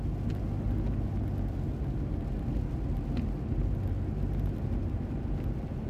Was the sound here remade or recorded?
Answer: recorded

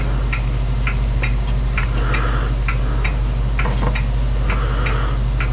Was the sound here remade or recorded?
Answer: recorded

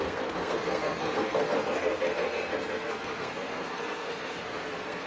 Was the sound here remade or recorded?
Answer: remade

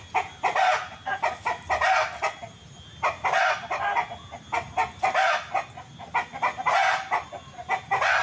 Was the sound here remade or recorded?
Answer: recorded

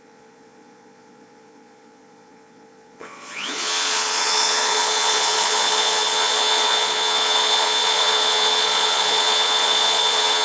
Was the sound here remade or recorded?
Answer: remade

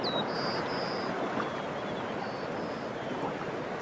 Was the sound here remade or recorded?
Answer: recorded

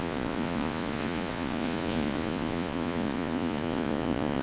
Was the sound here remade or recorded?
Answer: remade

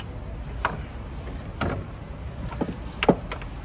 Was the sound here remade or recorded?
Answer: recorded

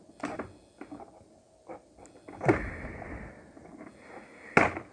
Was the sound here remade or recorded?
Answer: recorded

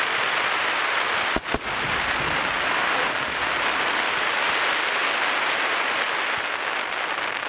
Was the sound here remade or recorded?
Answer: recorded